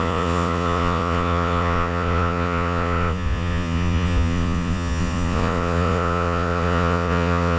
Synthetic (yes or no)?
yes